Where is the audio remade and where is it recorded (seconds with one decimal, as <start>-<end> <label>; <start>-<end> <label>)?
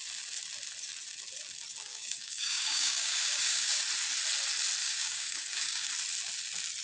0.0-1.9 recorded; 1.9-3.8 remade; 3.8-4.8 recorded; 4.8-5.9 remade; 5.9-6.8 recorded